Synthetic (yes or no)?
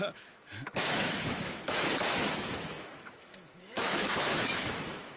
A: yes